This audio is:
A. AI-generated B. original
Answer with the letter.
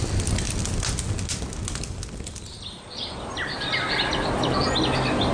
B